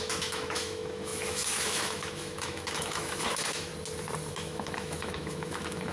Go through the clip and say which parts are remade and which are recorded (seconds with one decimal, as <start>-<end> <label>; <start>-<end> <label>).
0.0-3.7 remade; 3.7-4.3 recorded; 4.3-5.9 remade